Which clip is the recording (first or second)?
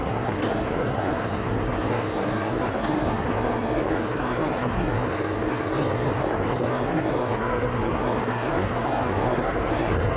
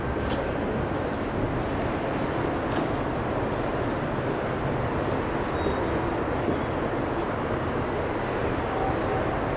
second